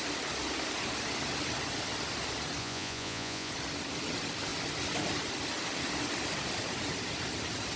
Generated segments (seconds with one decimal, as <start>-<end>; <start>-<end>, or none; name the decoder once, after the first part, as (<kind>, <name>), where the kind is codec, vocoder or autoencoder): 2.6-3.5 (vocoder, Vocos)